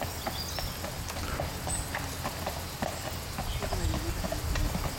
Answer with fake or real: real